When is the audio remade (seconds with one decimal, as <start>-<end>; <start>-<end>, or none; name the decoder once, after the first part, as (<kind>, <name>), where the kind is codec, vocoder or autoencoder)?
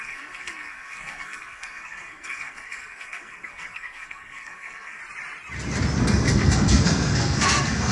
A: 0.0-5.0 (codec, SNAC); 6.0-7.9